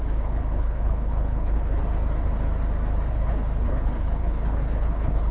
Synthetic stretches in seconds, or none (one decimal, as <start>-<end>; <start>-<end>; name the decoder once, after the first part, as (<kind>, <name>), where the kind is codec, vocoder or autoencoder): 0.0-1.8 (codec, HILCodec); 3.1-5.3